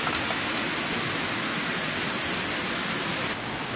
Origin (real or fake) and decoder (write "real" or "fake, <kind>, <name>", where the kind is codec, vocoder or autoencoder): real